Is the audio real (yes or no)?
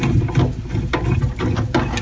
yes